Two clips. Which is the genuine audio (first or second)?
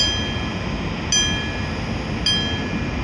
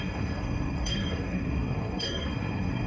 first